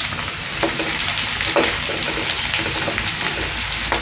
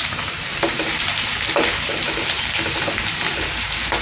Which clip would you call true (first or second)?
first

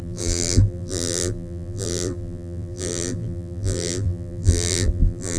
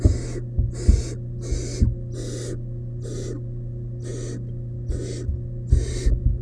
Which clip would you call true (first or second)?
second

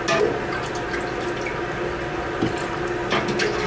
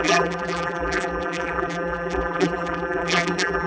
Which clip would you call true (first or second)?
first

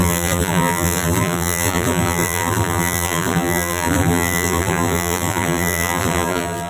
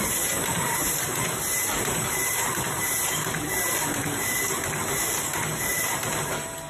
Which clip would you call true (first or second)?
second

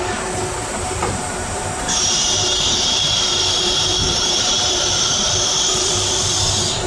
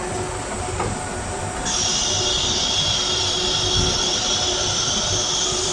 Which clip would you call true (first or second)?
second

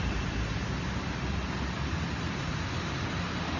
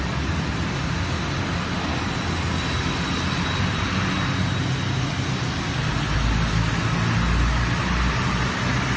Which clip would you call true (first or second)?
second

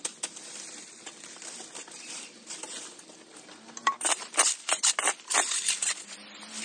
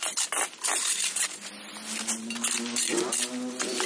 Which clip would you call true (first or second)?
second